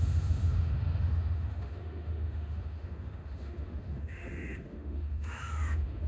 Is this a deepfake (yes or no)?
yes